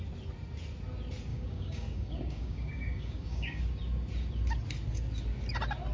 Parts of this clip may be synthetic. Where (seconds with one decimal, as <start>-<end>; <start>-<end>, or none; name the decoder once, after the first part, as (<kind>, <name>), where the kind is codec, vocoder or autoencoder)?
1.3-3.6 (codec, DAC)